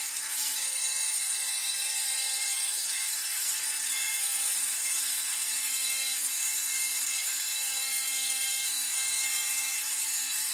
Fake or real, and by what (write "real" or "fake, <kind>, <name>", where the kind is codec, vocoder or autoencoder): fake, codec, SNAC